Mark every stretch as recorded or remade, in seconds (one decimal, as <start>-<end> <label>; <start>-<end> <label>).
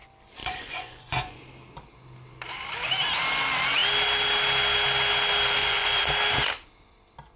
0.0-0.4 recorded; 0.4-1.4 remade; 1.4-5.6 recorded; 5.6-6.1 remade; 6.1-7.4 recorded